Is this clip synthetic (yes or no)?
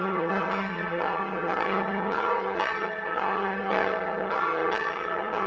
yes